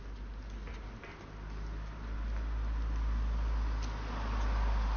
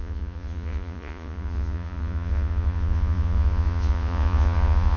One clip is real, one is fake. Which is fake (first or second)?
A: second